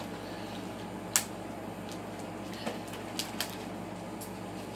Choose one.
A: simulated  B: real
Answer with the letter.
B